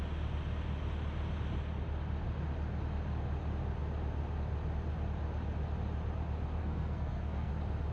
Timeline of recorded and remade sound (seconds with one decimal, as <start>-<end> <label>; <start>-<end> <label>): 0.0-6.6 recorded; 6.6-7.5 remade; 7.5-7.9 recorded